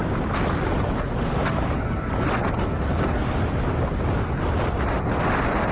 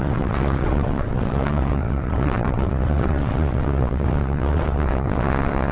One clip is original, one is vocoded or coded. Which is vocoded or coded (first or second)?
second